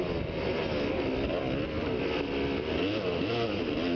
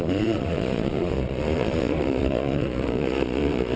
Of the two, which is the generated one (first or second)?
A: second